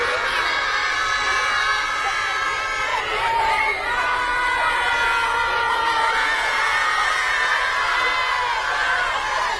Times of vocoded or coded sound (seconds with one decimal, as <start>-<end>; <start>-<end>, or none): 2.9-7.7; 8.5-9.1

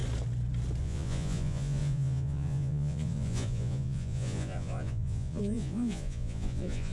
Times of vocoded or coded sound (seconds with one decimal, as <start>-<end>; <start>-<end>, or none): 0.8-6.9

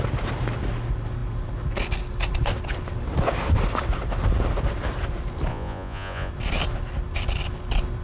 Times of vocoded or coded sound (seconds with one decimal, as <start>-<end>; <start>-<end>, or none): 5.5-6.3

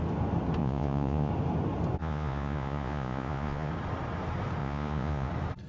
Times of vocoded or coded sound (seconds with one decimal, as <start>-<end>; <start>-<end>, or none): 0.6-1.3; 2.0-3.7; 4.6-5.3

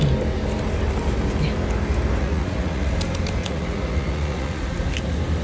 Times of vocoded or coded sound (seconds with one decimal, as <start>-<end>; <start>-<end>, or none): 2.2-2.9; 3.4-4.6

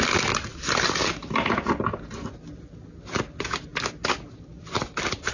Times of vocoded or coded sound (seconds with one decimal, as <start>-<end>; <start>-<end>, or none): none